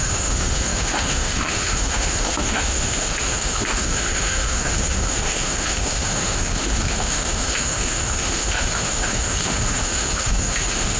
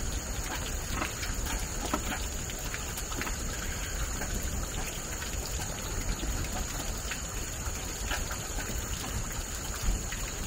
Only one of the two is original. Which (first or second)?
second